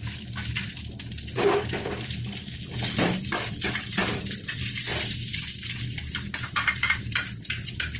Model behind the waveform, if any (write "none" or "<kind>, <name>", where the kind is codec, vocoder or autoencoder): vocoder, BigVGAN v2